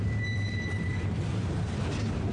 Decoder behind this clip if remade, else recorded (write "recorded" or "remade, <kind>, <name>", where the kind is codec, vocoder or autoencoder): remade, vocoder, BigVGAN v2